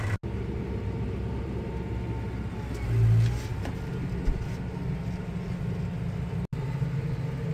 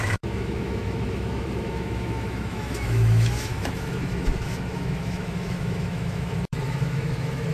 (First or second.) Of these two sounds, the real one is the first